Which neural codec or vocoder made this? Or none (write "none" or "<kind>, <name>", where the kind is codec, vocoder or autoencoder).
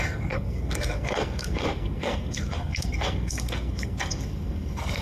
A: codec, SNAC